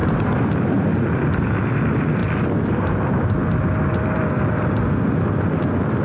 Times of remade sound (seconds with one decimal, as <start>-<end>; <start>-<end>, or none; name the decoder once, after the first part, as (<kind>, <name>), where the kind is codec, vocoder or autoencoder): 0.0-1.0 (vocoder, BigVGAN v2)